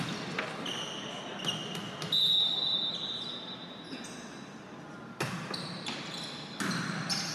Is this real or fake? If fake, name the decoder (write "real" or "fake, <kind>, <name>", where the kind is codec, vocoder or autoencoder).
real